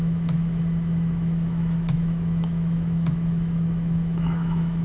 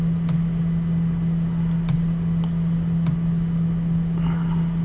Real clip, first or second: second